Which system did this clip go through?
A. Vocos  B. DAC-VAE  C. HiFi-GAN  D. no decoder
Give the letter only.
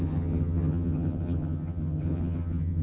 C